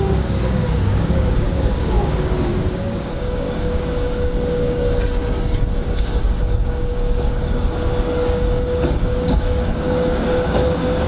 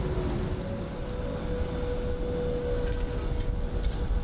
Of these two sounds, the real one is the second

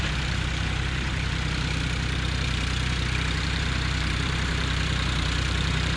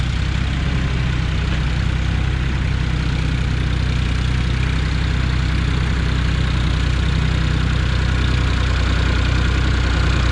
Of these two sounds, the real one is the second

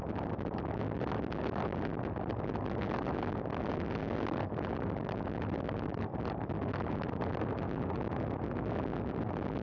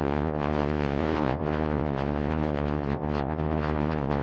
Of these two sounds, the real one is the first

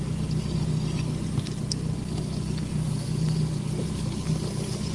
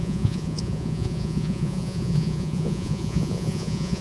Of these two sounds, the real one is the first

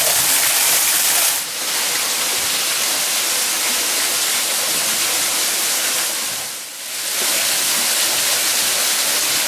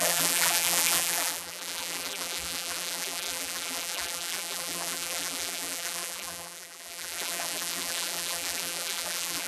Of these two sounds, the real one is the first